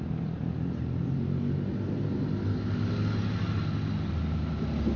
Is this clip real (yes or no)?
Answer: yes